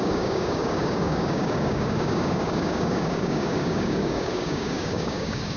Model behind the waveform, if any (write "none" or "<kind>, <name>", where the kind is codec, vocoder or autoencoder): codec, DAC